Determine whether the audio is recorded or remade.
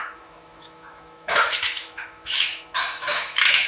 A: remade